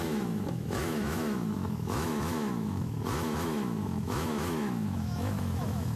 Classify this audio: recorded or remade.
remade